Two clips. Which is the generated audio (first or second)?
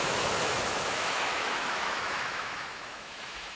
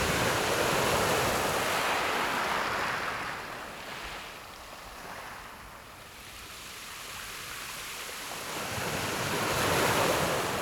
first